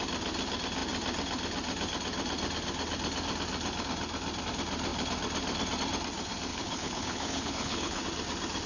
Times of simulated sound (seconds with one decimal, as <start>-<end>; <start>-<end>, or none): 6.5-8.0

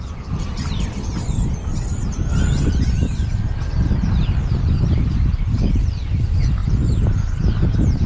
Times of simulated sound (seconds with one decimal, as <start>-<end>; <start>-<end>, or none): 0.0-1.9; 2.7-6.6

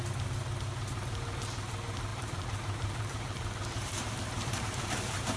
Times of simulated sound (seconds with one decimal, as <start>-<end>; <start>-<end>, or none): 2.1-5.4